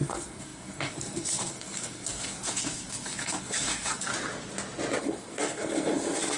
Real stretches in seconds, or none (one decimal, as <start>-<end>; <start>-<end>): 4.1-5.0